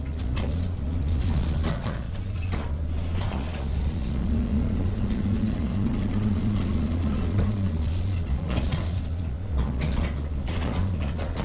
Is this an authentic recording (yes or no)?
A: no